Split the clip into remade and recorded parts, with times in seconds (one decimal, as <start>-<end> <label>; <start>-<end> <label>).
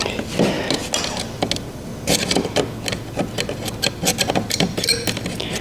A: 0.0-5.6 recorded